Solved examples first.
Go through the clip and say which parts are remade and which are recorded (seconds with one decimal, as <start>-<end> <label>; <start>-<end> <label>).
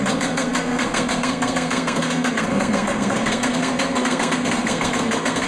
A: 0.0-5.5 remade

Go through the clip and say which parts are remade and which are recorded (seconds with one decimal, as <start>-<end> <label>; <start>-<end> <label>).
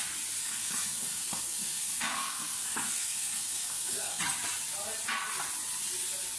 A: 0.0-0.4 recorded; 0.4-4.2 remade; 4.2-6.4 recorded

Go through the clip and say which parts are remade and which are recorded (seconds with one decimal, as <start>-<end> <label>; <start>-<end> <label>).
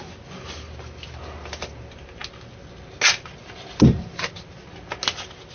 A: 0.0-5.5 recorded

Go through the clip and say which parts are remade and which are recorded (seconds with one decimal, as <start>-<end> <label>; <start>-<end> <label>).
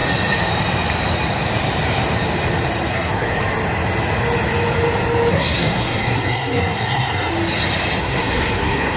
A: 0.0-2.9 recorded; 2.9-3.4 remade; 3.4-5.3 recorded; 5.3-7.3 remade; 7.3-8.0 recorded; 8.0-9.0 remade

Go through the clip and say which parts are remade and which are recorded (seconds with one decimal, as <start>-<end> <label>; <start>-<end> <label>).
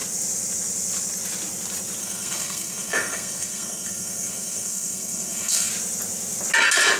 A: 0.0-2.0 recorded; 2.0-5.7 remade; 5.7-7.0 recorded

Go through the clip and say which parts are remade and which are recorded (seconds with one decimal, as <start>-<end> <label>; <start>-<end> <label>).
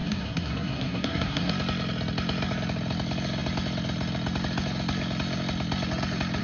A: 0.0-1.5 remade; 1.5-6.4 recorded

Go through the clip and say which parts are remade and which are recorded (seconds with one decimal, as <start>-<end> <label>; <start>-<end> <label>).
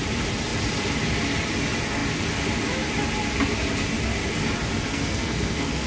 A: 0.0-4.9 recorded; 4.9-5.9 remade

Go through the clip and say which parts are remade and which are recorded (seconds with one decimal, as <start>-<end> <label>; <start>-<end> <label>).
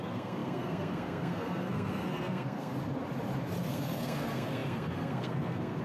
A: 0.0-2.7 remade; 2.7-3.7 recorded; 3.7-5.8 remade